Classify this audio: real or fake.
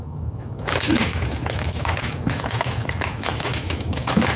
fake